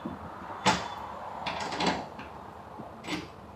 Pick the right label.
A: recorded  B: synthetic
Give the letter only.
A